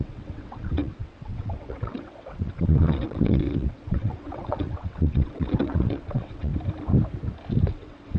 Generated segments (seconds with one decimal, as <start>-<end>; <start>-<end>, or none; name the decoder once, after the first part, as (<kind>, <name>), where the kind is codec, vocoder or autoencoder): 0.0-6.5 (vocoder, WaveNeXt); 7.7-8.2

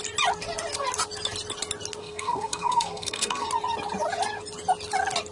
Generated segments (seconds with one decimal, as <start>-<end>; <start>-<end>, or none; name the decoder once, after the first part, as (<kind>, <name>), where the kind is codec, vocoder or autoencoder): 2.0-3.5 (codec, SNAC)

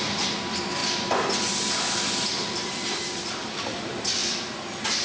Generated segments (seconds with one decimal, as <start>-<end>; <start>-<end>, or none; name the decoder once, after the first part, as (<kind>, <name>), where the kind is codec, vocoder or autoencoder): 0.0-4.2 (vocoder, BigVGAN v2)

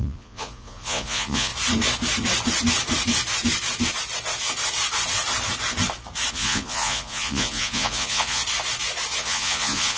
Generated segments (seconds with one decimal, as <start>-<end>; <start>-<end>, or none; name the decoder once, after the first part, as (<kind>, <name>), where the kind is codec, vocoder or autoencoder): 0.0-1.5 (vocoder, Vocos); 6.3-8.4; 9.2-10.0

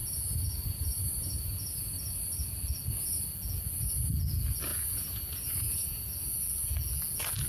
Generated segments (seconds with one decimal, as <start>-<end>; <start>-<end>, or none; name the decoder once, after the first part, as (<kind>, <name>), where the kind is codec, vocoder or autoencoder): 0.0-2.2 (vocoder, Vocos); 4.7-6.1